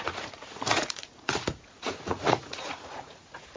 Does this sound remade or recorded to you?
remade